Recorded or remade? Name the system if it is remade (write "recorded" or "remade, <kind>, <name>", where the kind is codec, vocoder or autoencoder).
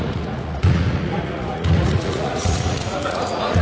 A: remade, vocoder, Vocos